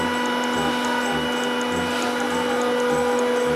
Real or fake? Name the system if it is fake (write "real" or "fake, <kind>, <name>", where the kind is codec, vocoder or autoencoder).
real